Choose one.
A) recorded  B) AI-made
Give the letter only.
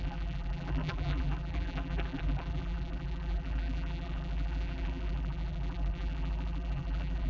B